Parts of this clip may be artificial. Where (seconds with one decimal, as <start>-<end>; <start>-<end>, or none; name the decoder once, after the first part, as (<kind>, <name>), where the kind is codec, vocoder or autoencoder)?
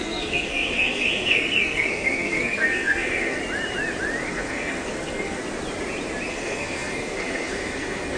0.0-3.4 (codec, SNAC); 4.3-5.4; 6.3-8.2